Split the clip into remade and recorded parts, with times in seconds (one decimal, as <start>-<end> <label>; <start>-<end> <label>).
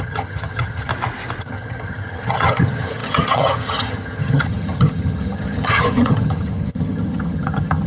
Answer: 0.0-0.9 remade; 0.9-1.4 recorded; 1.4-7.9 remade